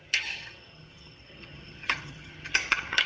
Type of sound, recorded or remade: remade